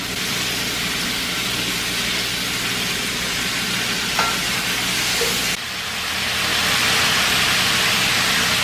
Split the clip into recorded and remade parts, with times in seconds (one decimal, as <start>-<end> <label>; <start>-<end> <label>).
0.0-6.5 recorded; 6.5-7.9 remade; 7.9-8.6 recorded